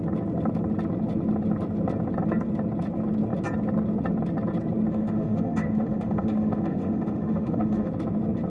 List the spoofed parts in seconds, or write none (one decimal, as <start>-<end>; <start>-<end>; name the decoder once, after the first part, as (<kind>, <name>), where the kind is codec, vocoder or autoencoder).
4.9-7.9 (autoencoder, DAC-VAE)